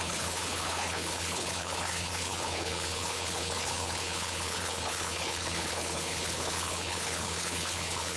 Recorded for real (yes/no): no